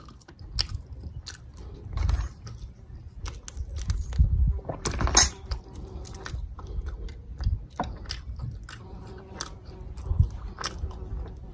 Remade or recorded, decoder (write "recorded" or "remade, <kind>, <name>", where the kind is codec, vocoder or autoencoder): recorded